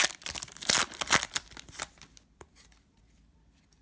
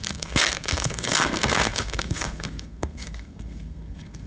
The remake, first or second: second